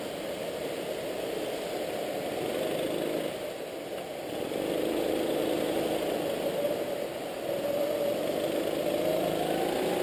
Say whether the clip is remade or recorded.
recorded